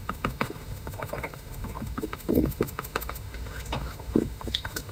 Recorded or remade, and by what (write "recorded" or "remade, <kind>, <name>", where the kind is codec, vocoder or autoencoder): remade, autoencoder, DAC-VAE